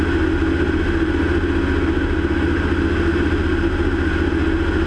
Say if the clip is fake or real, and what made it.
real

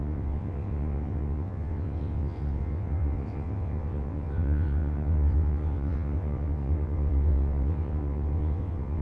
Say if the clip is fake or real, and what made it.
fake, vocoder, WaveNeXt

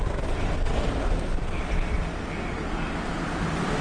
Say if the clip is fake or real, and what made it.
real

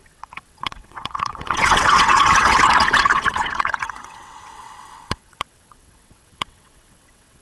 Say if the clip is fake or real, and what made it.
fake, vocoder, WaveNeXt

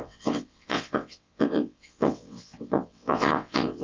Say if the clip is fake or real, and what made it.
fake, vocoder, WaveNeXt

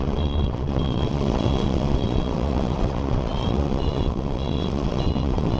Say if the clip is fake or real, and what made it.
fake, vocoder, WaveNeXt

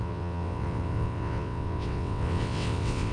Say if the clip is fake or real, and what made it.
fake, vocoder, WaveNeXt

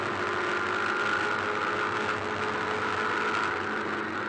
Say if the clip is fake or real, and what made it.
real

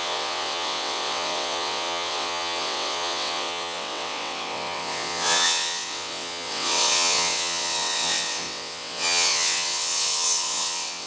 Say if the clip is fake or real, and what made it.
fake, vocoder, WaveNeXt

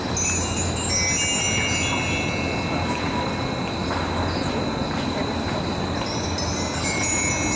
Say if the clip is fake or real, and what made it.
real